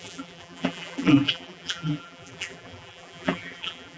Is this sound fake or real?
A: fake